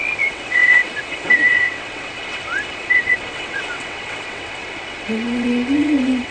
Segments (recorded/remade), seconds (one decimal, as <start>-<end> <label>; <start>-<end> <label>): 0.0-6.3 remade